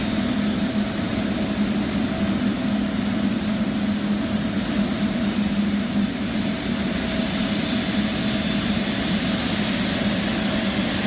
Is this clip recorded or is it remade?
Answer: recorded